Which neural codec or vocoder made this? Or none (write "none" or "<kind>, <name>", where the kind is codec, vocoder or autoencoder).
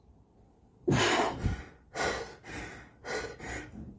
none